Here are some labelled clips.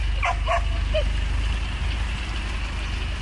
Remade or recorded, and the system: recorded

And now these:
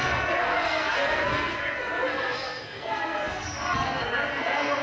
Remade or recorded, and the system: remade, codec, SNAC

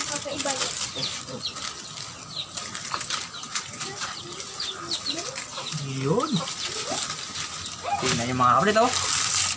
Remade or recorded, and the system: recorded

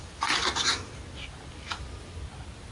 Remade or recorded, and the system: recorded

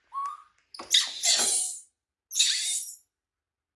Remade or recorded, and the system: recorded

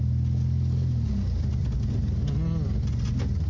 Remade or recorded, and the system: recorded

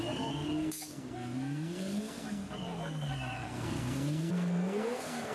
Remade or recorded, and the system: remade, codec, SNAC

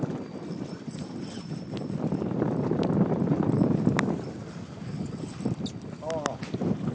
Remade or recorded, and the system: recorded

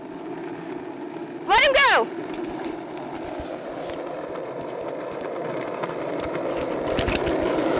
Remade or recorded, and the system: recorded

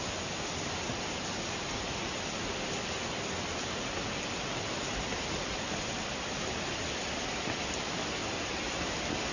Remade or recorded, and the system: recorded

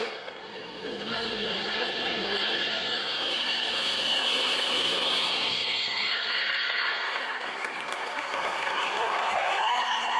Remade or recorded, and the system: remade, codec, SNAC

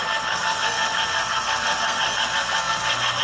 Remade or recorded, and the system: remade, codec, SNAC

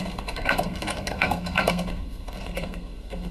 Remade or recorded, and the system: remade, codec, SNAC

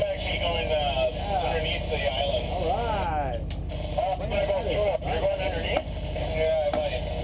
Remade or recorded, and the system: recorded